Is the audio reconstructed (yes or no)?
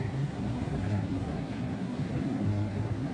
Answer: yes